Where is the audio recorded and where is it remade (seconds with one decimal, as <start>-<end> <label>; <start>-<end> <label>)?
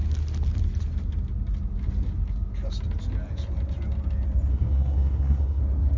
0.0-4.5 recorded; 4.5-5.6 remade; 5.6-6.0 recorded